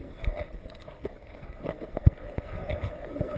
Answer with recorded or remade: remade